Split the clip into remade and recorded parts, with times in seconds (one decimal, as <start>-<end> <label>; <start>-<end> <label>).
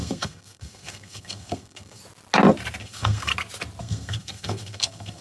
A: 0.0-2.0 remade; 2.0-2.8 recorded; 2.8-3.3 remade; 3.3-3.8 recorded; 3.8-5.2 remade